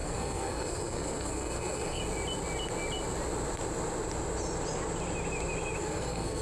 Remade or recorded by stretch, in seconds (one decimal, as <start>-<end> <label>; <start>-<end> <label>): 0.0-2.0 remade; 2.0-5.8 recorded; 5.8-6.4 remade